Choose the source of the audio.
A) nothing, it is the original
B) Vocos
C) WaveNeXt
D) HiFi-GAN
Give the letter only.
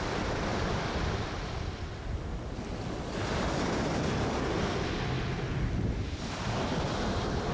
A